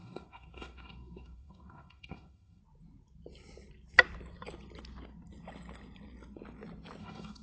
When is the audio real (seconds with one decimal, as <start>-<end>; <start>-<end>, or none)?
2.6-7.0